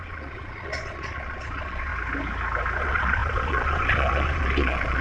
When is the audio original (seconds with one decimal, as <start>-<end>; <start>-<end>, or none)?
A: 1.9-2.8